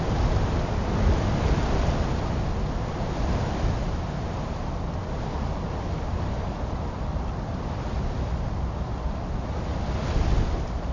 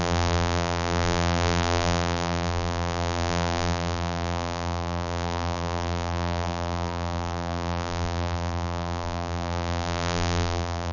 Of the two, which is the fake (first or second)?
second